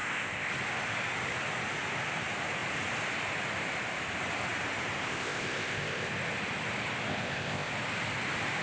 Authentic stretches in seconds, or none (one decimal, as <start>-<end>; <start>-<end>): 0.5-5.0; 6.1-7.1; 7.7-8.6